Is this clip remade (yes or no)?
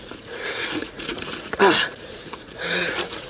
yes